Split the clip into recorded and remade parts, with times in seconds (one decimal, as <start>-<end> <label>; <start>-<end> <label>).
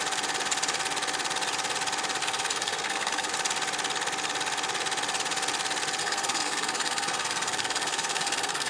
0.0-2.2 recorded; 2.2-3.3 remade; 3.3-6.0 recorded; 6.0-8.7 remade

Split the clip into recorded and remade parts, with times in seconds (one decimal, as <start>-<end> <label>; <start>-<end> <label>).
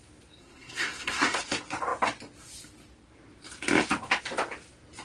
0.0-0.4 recorded; 0.4-1.4 remade; 1.4-5.0 recorded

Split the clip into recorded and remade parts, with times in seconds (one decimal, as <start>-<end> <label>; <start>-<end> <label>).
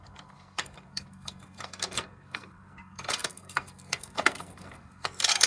0.0-5.5 remade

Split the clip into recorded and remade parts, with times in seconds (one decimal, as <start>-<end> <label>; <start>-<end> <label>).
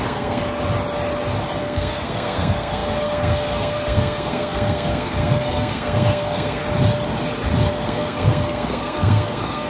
0.0-0.4 remade; 0.4-1.6 recorded; 1.6-6.6 remade; 6.6-7.7 recorded; 7.7-9.7 remade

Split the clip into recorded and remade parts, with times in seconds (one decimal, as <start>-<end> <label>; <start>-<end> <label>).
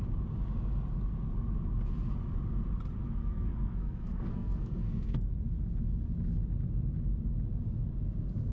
0.0-3.2 recorded; 3.2-5.3 remade; 5.3-8.5 recorded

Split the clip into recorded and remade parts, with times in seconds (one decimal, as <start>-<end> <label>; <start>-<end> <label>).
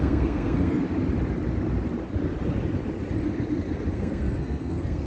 0.0-0.8 remade; 0.8-3.9 recorded; 3.9-5.1 remade